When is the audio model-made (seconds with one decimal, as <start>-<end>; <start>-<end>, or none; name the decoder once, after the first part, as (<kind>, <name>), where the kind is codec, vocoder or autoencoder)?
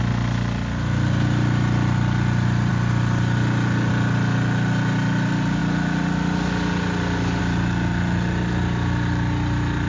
none